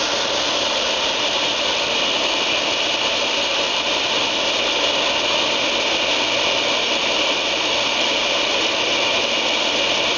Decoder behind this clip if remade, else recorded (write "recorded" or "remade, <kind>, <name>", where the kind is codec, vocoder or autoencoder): recorded